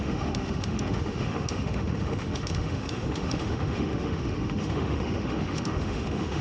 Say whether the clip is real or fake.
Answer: fake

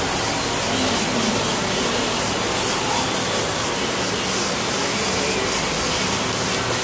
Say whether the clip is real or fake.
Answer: real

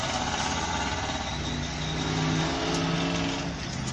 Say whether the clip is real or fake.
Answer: real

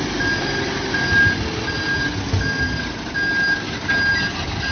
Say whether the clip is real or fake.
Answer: real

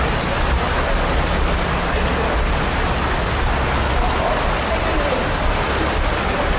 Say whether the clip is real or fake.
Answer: real